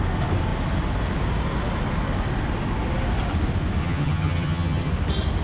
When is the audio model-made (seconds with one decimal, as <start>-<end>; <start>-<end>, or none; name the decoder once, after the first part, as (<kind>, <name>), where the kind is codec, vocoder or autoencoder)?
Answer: 3.8-4.9 (vocoder, HiFi-GAN)